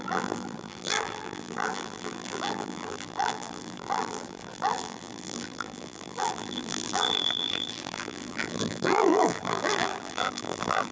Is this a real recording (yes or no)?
no